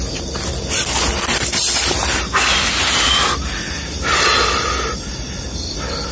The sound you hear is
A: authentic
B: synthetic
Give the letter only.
A